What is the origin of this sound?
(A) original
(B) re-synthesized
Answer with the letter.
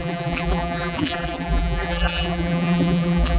B